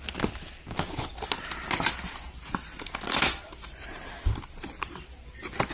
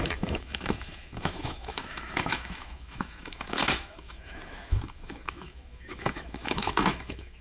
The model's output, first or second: second